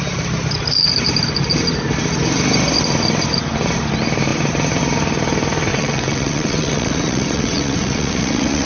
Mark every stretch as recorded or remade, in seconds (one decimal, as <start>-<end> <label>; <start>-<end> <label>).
0.0-5.7 recorded; 5.7-8.7 remade